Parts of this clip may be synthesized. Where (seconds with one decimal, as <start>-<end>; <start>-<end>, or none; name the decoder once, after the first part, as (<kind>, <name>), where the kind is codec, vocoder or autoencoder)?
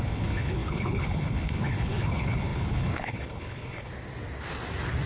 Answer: 0.0-3.9 (codec, HILCodec)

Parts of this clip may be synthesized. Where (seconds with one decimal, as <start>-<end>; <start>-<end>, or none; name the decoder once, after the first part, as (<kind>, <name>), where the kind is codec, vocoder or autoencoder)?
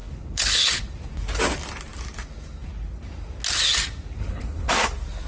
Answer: 0.0-0.8 (codec, HILCodec); 4.2-4.7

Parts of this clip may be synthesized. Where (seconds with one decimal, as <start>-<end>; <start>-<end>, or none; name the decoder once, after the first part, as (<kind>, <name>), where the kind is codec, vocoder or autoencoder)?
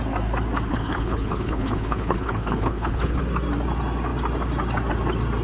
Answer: 0.7-3.2 (codec, HILCodec)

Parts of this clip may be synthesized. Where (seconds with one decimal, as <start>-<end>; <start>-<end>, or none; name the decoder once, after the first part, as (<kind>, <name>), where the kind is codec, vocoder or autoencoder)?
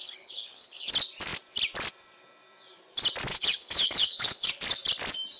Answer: 0.0-0.9 (codec, HILCodec); 3.3-4.5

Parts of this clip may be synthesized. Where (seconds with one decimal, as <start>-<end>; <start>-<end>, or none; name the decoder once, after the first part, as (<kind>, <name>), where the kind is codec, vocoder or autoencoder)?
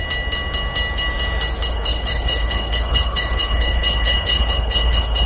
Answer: 1.7-5.3 (codec, HILCodec)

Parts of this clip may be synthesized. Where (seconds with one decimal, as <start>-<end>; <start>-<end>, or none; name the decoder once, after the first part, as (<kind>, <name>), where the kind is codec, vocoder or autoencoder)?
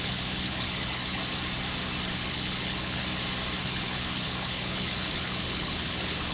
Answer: 0.0-1.2 (codec, HILCodec); 2.3-3.0; 3.6-6.3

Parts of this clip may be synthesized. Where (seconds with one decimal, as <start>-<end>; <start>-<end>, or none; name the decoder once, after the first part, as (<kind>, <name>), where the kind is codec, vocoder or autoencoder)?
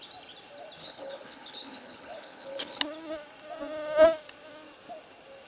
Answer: 0.8-2.8 (codec, HILCodec)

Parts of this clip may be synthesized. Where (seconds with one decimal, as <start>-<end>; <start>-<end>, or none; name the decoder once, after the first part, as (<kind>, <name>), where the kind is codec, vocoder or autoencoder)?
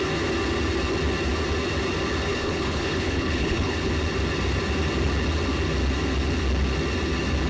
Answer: 2.3-3.9 (codec, HILCodec)